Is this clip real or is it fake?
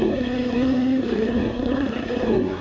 fake